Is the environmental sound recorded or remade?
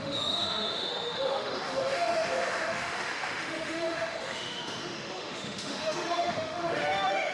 remade